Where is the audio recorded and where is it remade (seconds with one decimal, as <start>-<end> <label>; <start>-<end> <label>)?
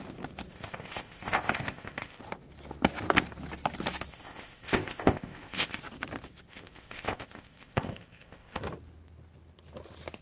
0.0-0.5 recorded; 0.5-2.2 remade; 2.2-4.1 recorded; 4.1-5.8 remade; 5.8-6.5 recorded; 6.5-8.6 remade; 8.6-10.2 recorded